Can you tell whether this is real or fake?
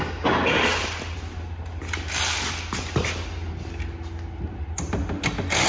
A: real